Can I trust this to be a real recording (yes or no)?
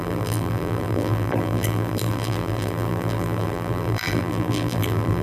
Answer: no